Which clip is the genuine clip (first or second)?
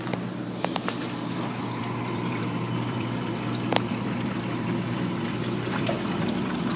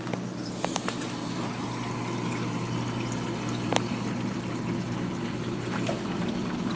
second